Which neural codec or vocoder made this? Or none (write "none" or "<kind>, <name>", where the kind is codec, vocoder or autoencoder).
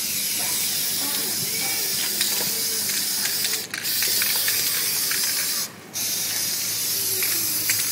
none